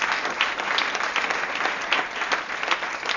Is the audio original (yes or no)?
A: yes